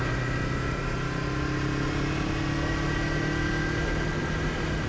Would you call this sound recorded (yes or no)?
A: yes